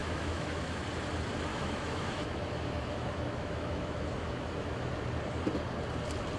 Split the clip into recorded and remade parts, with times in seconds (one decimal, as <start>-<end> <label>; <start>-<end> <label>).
0.0-0.8 remade; 0.8-1.5 recorded; 1.5-4.9 remade; 4.9-6.4 recorded